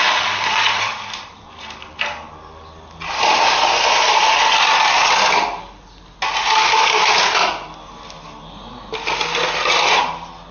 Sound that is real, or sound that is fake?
real